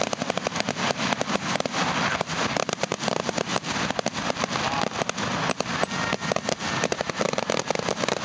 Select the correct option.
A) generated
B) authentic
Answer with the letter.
B